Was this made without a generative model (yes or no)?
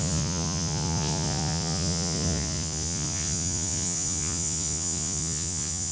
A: no